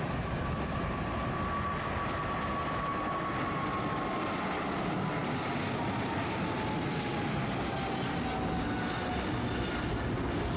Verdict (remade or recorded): recorded